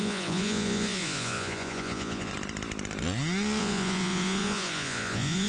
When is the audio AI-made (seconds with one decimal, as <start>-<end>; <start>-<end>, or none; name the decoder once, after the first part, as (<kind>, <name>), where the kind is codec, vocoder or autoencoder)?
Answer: 0.0-2.3 (vocoder, Vocos); 3.6-5.5